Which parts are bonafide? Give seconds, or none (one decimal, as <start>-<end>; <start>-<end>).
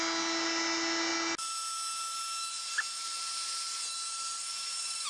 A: 0.0-5.1